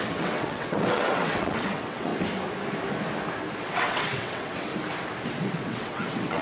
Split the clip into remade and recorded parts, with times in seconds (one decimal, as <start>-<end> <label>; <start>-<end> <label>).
0.0-2.1 remade; 2.1-3.6 recorded; 3.6-4.7 remade; 4.7-5.3 recorded; 5.3-6.4 remade